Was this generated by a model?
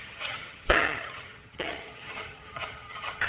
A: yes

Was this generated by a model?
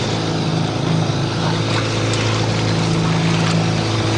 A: no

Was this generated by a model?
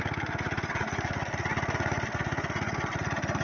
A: no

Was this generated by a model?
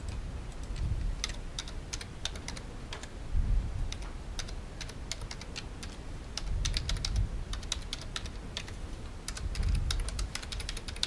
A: no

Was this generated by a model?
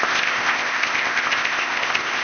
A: yes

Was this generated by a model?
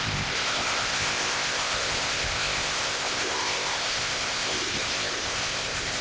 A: yes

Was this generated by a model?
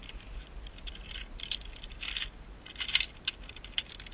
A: no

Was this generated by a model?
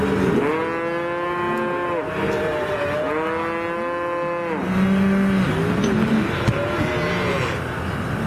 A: no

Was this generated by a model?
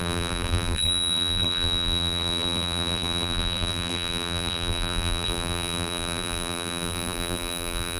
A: yes